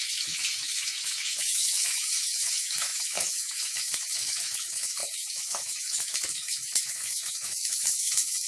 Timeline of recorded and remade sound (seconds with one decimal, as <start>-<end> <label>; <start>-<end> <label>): 0.0-8.5 remade